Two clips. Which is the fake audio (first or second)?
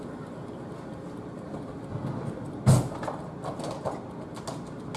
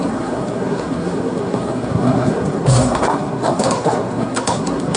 second